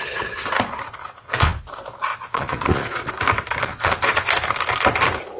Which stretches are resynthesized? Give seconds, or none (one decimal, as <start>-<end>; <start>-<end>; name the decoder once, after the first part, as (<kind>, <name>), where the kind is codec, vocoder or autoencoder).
1.0-1.6 (vocoder, Vocos); 2.1-3.1; 3.6-4.3